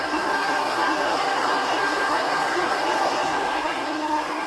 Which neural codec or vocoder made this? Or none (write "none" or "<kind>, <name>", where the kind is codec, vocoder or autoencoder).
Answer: codec, SNAC